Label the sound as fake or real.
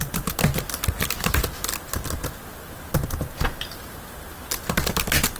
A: real